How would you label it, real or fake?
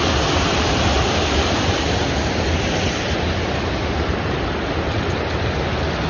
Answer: real